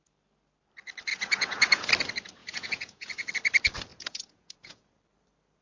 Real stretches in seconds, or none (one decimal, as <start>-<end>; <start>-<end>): 0.0-1.1; 1.9-2.4; 3.3-3.9; 4.9-5.6